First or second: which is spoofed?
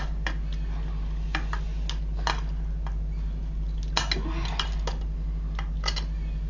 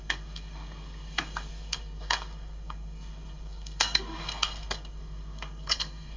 second